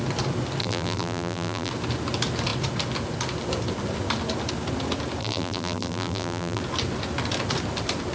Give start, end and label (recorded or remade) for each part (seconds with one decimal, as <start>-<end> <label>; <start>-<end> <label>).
0.0-0.6 recorded; 0.6-1.7 remade; 1.7-5.2 recorded; 5.2-6.6 remade; 6.6-8.1 recorded